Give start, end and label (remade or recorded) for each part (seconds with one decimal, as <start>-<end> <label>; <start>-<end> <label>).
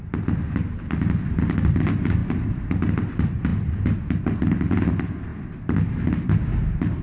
0.0-2.2 recorded; 2.2-2.8 remade; 2.8-7.0 recorded